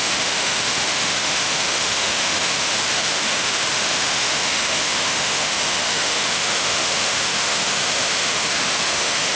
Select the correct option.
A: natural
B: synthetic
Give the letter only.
B